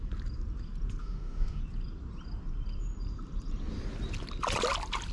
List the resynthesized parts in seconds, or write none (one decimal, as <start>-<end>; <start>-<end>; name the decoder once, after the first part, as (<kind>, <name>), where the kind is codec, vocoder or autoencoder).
1.0-1.6 (autoencoder, DAC-VAE)